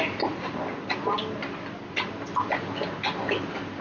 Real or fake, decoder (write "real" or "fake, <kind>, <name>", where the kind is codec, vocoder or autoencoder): real